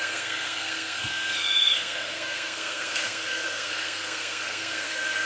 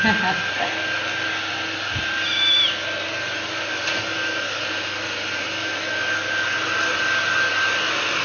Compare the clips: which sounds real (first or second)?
second